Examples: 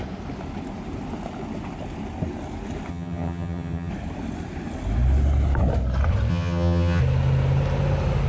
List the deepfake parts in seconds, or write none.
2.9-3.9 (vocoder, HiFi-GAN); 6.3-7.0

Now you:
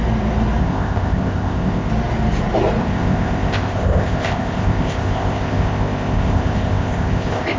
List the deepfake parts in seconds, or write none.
0.6-1.9 (codec, ZipCodec); 2.8-7.6

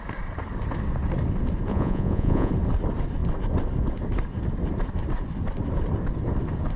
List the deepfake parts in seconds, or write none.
1.7-2.5 (vocoder, Vocos)

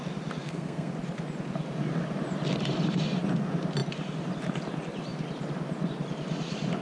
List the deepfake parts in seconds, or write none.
0.4-0.9 (codec, SNAC)

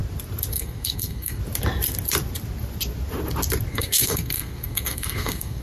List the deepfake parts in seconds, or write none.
0.5-1.4 (codec, SNAC); 3.7-5.6

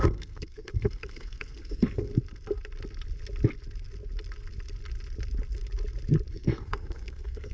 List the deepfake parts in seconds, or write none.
0.0-2.1 (codec, SNAC); 6.3-7.5

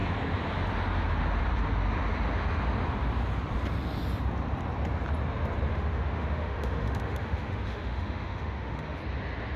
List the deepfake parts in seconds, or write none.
5.7-9.0 (autoencoder, DAC-VAE)